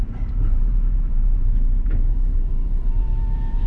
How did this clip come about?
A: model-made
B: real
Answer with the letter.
A